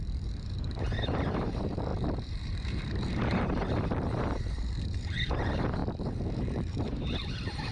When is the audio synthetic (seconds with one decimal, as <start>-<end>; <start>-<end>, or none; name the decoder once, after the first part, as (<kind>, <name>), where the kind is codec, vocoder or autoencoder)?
0.0-7.7 (vocoder, BigVGAN v2)